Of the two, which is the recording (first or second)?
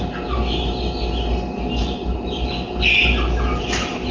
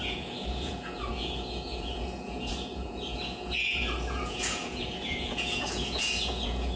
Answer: first